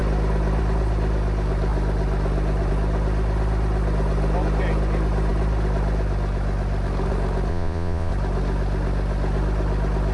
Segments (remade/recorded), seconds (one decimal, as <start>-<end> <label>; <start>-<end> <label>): 0.0-7.5 recorded; 7.5-8.1 remade; 8.1-10.1 recorded

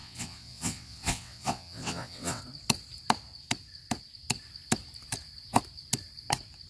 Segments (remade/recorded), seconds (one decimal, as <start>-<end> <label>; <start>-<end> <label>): 0.0-2.4 remade; 2.4-6.7 recorded

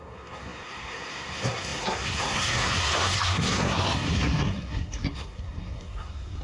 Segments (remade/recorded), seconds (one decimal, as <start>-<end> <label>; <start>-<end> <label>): 0.0-6.4 remade

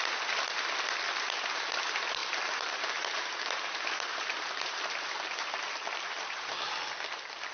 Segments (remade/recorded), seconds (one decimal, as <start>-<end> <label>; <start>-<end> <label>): 0.0-2.2 recorded; 2.2-6.5 remade; 6.5-7.5 recorded

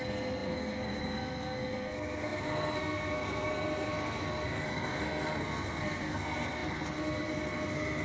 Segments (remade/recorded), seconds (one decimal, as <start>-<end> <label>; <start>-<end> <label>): 0.0-8.0 remade

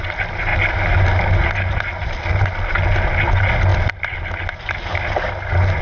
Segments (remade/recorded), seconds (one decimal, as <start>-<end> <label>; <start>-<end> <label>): 0.0-5.8 recorded

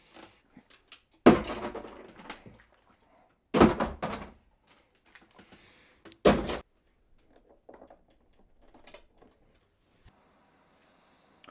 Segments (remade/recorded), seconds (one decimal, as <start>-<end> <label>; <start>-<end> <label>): 0.0-11.5 recorded

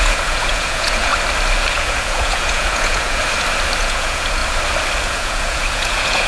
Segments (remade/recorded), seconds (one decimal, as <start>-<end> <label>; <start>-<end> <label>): 0.0-1.1 remade; 1.1-1.7 recorded; 1.7-3.2 remade; 3.2-3.8 recorded; 3.8-4.4 remade; 4.4-5.1 recorded; 5.1-6.3 remade